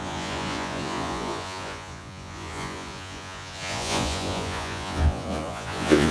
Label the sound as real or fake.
fake